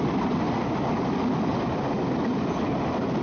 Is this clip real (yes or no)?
yes